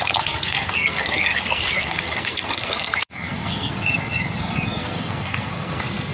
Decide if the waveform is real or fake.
fake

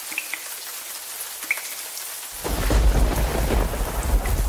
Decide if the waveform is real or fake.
real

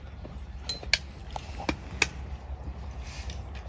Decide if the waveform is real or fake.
real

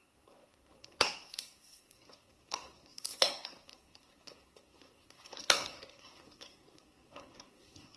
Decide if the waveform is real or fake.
fake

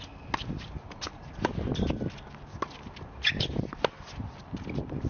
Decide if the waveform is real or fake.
real